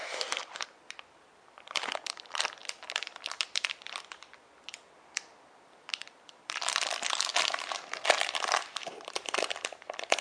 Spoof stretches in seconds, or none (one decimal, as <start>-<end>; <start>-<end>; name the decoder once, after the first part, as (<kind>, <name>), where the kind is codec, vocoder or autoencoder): 0.9-7.3 (vocoder, BigVGAN v2); 8.0-10.2